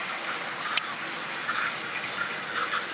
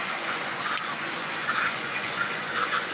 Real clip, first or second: first